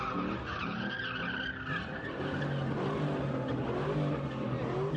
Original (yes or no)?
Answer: yes